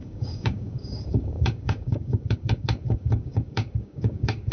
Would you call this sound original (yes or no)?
no